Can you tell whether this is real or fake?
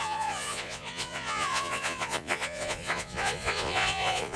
fake